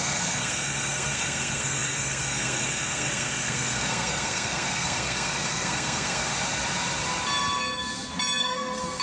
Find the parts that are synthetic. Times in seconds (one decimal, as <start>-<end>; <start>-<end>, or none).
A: 0.0-6.3; 8.4-9.0